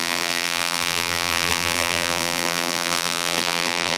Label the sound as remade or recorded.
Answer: remade